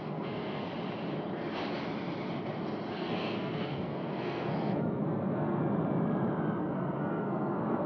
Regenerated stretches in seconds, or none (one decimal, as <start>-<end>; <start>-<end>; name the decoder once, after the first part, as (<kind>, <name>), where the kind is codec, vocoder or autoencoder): 0.0-0.7 (codec, SNAC); 2.9-5.6; 6.6-7.9